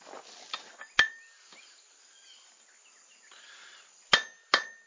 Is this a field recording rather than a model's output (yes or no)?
yes